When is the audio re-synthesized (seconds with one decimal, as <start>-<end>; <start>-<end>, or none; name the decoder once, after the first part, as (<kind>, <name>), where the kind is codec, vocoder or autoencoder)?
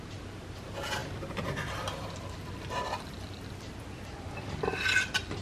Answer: none